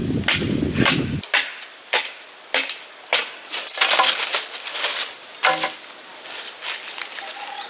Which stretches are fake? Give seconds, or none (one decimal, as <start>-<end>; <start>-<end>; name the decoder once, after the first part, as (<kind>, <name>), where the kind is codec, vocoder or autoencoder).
none